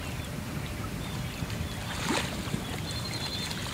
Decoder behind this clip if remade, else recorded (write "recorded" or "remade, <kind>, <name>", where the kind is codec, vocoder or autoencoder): remade, vocoder, BigVGAN v2